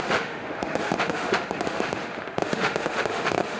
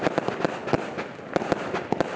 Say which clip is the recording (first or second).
second